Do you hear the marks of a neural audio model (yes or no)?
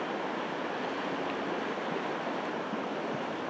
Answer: no